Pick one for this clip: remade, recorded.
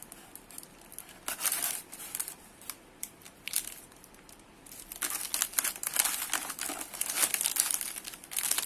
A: recorded